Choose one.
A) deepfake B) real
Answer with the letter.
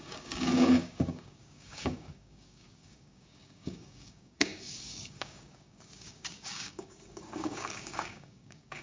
A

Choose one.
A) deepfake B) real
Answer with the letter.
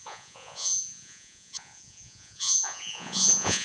A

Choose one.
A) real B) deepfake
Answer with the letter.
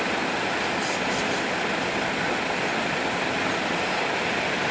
A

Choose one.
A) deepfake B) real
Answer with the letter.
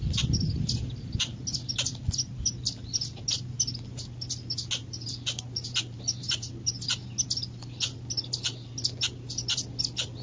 B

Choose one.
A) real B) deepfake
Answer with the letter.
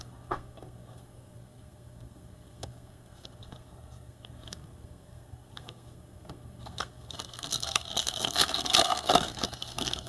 B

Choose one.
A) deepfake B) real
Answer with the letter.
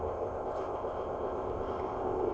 A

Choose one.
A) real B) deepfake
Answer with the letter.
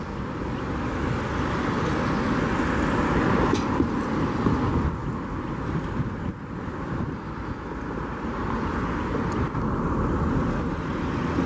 A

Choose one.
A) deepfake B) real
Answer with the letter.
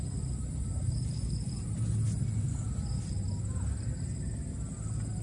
B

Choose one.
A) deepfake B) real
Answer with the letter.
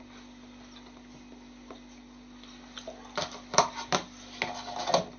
B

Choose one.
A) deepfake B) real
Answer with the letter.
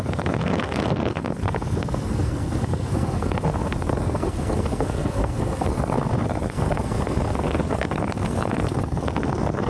A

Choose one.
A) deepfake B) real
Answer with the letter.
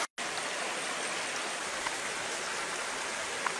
B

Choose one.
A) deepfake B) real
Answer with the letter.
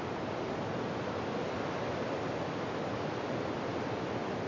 B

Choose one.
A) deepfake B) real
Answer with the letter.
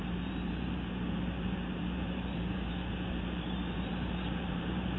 A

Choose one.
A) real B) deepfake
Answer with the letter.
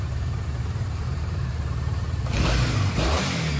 B